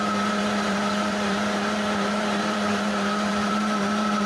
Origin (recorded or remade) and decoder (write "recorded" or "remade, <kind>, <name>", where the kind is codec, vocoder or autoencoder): remade, vocoder, BigVGAN v2